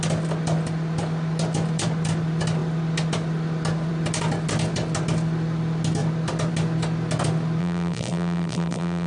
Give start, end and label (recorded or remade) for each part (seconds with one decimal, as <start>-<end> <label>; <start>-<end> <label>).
0.0-7.6 recorded; 7.6-9.1 remade